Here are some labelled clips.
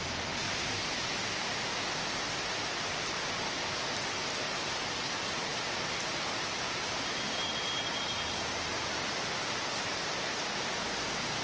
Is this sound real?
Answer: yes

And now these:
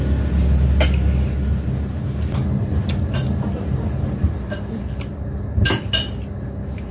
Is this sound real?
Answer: yes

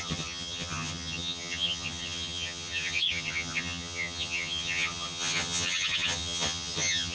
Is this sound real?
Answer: no